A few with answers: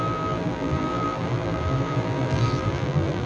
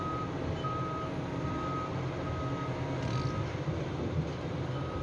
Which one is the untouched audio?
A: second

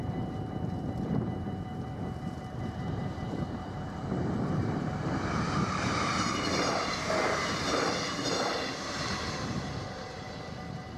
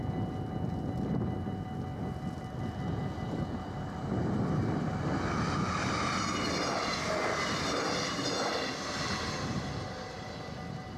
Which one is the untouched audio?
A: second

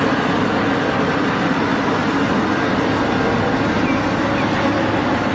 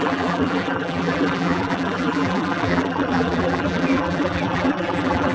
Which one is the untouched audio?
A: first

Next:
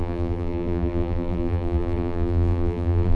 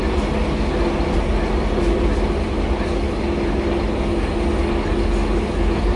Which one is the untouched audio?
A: second